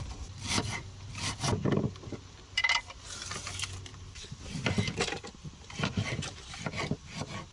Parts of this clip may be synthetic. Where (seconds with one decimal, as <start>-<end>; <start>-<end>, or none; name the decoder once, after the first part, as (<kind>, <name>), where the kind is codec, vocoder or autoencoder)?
3.9-6.8 (vocoder, BigVGAN v2)